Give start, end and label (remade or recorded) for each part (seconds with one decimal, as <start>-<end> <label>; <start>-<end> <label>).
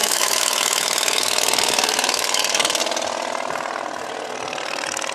0.0-2.8 remade; 2.8-5.1 recorded